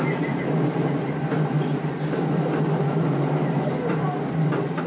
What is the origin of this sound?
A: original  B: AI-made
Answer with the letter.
A